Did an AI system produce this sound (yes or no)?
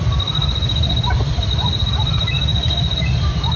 no